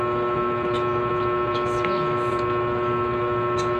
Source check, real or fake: real